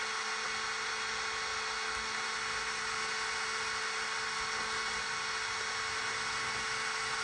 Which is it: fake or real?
real